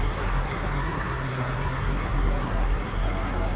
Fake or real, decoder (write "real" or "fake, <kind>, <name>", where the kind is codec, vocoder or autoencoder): fake, codec, SNAC